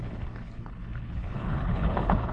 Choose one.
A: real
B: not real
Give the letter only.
B